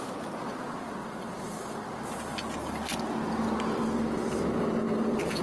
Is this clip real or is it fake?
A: real